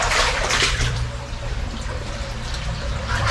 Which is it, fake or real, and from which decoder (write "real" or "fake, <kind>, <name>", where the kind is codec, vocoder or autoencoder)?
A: fake, vocoder, BigVGAN v2